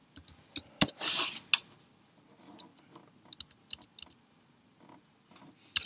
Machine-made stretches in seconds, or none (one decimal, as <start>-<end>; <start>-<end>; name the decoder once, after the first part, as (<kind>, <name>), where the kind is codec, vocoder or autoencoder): none